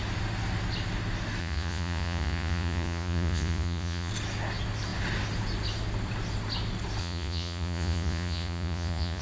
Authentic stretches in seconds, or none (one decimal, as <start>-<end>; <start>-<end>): 0.0-1.4; 4.1-7.0